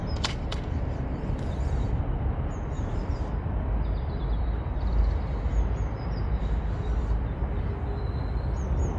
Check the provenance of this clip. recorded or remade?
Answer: remade